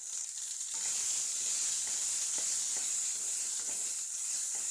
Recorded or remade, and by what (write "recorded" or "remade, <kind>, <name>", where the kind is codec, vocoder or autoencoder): recorded